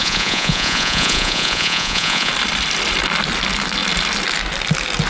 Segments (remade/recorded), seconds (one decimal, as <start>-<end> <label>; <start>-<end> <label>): 0.0-2.3 remade; 2.3-5.1 recorded

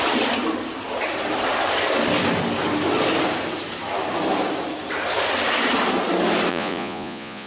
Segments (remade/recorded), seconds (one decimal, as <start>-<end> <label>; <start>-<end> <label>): 0.0-6.5 recorded; 6.5-7.5 remade

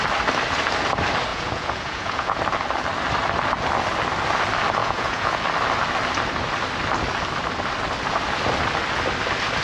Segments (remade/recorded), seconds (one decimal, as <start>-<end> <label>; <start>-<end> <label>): 0.0-1.3 recorded; 1.3-2.4 remade; 2.4-4.8 recorded; 4.8-5.4 remade; 5.4-9.6 recorded

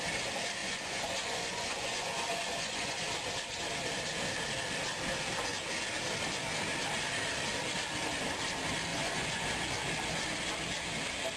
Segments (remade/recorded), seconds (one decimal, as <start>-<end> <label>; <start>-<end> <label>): 0.0-0.6 recorded; 0.6-3.0 remade; 3.0-8.9 recorded; 8.9-9.5 remade; 9.5-11.4 recorded